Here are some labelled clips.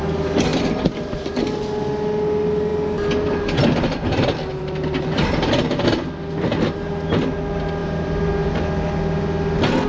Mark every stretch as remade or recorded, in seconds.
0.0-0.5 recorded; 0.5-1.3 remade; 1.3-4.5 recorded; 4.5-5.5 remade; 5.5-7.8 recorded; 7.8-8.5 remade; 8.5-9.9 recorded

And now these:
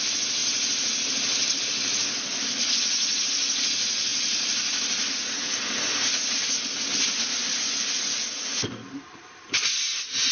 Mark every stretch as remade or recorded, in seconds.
0.0-10.3 recorded

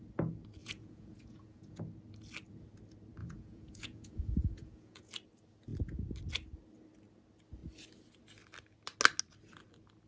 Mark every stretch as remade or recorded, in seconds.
0.0-0.6 recorded; 0.6-1.8 remade; 1.8-3.2 recorded; 3.2-5.1 remade; 5.1-10.1 recorded